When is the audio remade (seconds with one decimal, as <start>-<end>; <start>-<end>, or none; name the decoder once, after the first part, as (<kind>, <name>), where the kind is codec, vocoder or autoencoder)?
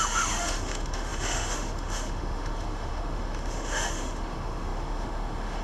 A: 0.0-5.6 (autoencoder, DAC-VAE)